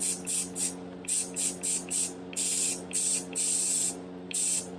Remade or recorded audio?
recorded